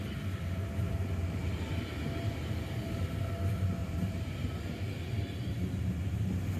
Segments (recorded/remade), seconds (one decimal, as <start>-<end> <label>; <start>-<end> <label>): 0.0-3.8 recorded; 3.8-4.6 remade; 4.6-6.6 recorded